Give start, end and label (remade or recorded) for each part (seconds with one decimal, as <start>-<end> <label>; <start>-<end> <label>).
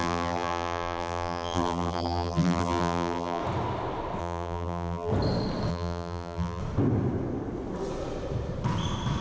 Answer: 0.0-3.4 remade; 3.4-4.2 recorded; 4.2-5.1 remade; 5.1-5.7 recorded; 5.7-6.6 remade; 6.6-9.2 recorded